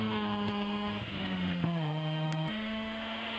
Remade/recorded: remade